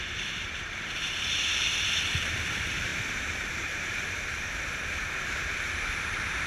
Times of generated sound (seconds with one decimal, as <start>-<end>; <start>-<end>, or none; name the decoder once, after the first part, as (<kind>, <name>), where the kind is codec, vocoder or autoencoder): 0.0-1.7 (vocoder, BigVGAN v2); 2.2-6.5